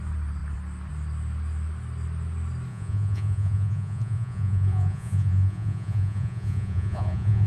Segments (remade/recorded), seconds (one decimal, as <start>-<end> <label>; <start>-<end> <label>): 0.0-2.7 recorded; 2.7-7.5 remade